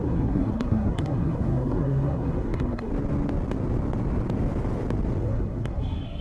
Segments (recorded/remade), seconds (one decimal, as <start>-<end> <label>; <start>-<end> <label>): 0.0-2.9 remade; 2.9-5.2 recorded; 5.2-6.2 remade